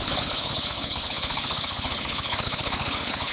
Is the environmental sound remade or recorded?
remade